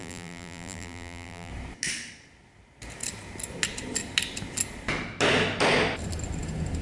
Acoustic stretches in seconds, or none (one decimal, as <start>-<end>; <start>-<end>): 1.5-6.8